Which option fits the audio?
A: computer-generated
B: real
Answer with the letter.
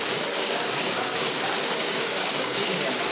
A